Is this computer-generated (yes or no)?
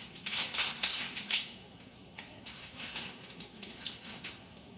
yes